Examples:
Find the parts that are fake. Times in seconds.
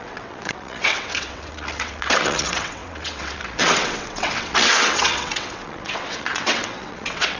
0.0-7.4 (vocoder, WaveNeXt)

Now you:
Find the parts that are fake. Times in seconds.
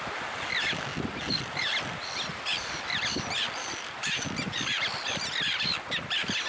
none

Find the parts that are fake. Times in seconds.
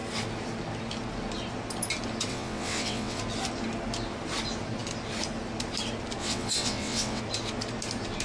2.3-3.2 (vocoder, WaveNeXt); 6.2-7.2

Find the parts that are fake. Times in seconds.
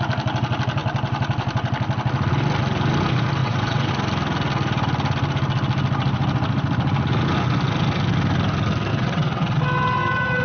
3.4-3.9 (vocoder, WaveNeXt); 8.9-9.6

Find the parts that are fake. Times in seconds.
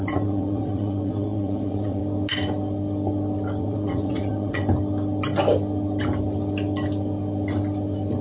0.0-2.0 (vocoder, WaveNeXt); 3.6-4.6